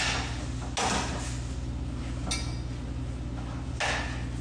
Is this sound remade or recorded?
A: recorded